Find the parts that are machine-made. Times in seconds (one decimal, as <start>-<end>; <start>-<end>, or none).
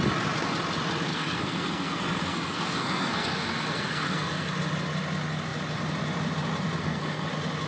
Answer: 1.1-4.5; 6.8-7.3